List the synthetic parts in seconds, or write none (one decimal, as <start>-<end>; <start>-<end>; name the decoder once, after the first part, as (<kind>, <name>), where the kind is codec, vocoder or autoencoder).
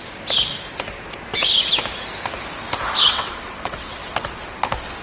3.0-4.0 (vocoder, WaveNeXt)